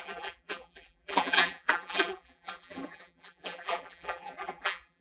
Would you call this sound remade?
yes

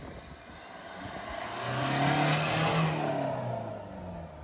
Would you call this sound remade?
no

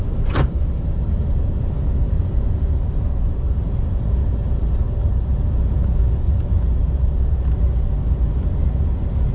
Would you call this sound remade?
yes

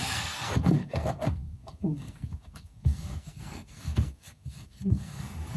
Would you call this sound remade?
yes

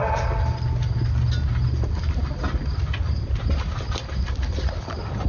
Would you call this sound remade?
no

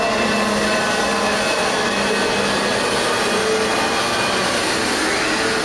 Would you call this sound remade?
no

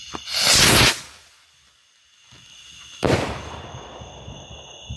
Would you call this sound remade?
no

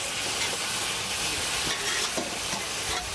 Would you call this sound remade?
no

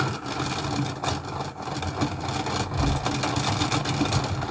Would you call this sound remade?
no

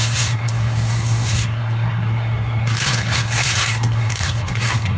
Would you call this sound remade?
yes